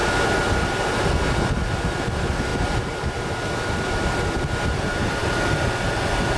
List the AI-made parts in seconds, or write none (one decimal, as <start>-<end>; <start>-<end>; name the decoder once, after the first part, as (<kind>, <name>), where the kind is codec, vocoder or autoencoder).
0.0-0.6 (vocoder, BigVGAN v2)